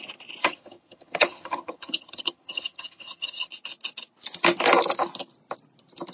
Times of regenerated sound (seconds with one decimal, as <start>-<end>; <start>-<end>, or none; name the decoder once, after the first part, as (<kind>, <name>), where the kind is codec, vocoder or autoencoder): 0.4-3.5 (vocoder, HiFi-GAN)